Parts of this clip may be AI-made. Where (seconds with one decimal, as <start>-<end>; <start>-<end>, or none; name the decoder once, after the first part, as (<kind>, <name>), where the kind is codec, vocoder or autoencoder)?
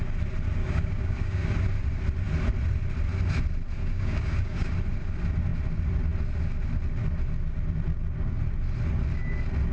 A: 0.6-1.5 (codec, DAC); 3.8-4.7